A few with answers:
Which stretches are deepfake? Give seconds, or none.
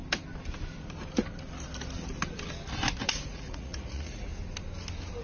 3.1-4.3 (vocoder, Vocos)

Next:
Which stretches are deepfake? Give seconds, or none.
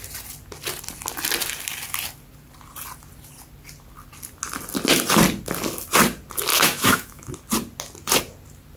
6.5-7.3 (autoencoder, DAC-VAE)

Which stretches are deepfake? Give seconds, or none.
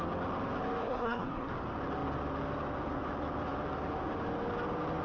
0.8-1.5 (codec, SNAC)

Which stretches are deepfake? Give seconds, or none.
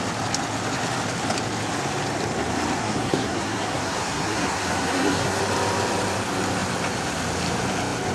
2.8-5.4 (codec, SNAC)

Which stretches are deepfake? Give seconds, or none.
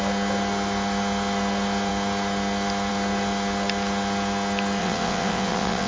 4.8-5.9 (vocoder, WaveNeXt)